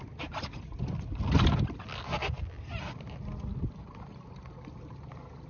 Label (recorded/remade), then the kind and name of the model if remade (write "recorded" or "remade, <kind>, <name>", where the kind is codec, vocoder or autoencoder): recorded